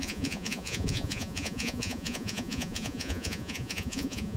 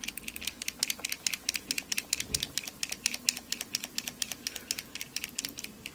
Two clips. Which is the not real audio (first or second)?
first